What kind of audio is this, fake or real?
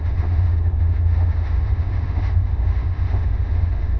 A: fake